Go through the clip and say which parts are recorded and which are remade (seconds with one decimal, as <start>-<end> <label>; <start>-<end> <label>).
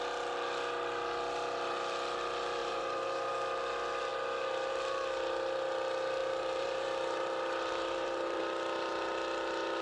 0.0-2.6 recorded; 2.6-3.3 remade; 3.3-6.2 recorded; 6.2-8.4 remade; 8.4-9.8 recorded